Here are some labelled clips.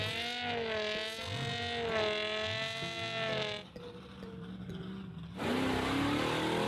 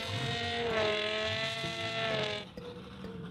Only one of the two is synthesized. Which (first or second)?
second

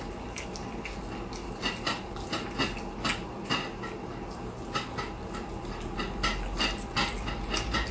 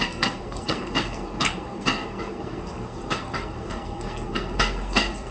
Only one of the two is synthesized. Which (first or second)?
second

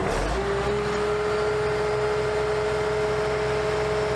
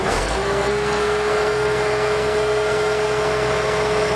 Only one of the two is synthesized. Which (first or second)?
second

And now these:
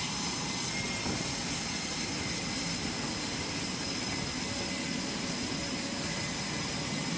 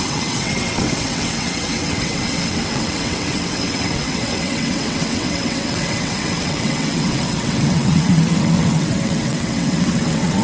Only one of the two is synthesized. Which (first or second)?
second